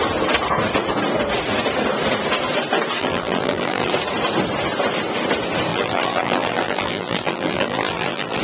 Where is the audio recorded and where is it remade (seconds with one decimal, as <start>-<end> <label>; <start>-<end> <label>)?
0.0-3.0 recorded; 3.0-3.9 remade; 3.9-5.7 recorded; 5.7-8.4 remade